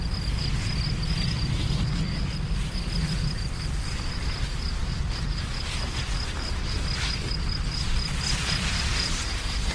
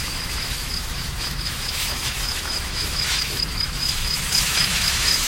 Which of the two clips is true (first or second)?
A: first